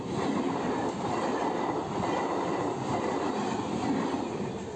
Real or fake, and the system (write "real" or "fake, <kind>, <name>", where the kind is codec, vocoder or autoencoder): fake, vocoder, BigVGAN v2